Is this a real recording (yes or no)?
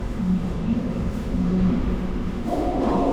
no